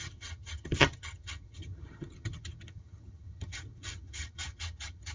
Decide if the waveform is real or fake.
fake